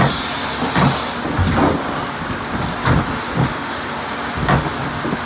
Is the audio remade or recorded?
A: recorded